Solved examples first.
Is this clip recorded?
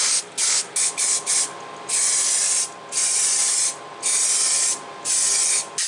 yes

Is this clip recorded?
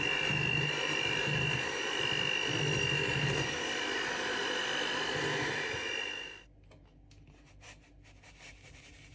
yes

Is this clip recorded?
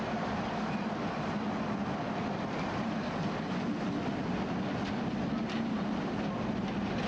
yes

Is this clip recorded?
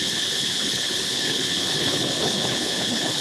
no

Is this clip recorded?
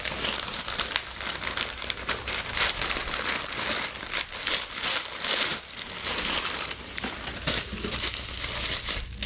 yes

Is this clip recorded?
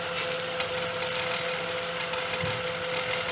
yes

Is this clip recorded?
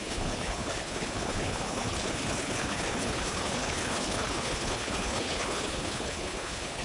no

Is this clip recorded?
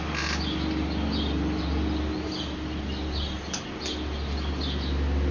yes